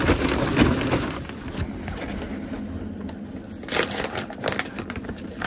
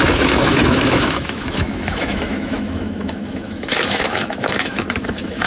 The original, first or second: first